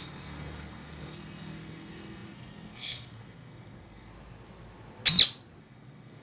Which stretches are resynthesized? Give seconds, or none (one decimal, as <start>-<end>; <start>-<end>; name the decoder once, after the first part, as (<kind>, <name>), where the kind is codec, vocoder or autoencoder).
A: 0.0-4.1 (codec, SNAC); 5.6-6.2